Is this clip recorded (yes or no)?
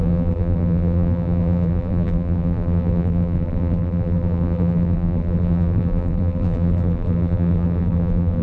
no